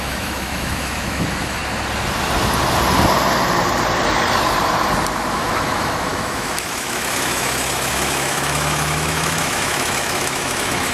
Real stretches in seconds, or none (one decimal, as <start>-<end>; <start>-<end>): 1.6-5.3